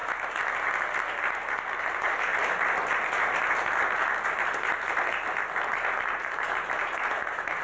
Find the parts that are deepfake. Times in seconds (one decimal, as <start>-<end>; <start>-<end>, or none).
1.8-2.3; 5.7-7.6